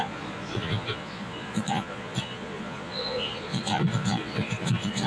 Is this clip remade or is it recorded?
remade